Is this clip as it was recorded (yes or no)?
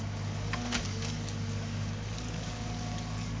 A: no